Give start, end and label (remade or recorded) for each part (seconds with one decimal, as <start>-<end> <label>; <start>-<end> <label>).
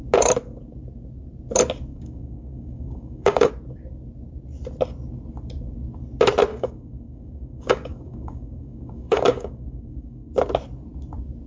0.0-1.9 recorded; 1.9-3.5 remade; 3.5-6.5 recorded; 6.5-10.3 remade; 10.3-11.5 recorded